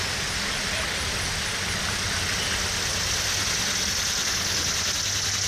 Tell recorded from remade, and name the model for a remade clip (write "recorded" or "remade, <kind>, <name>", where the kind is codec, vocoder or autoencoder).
recorded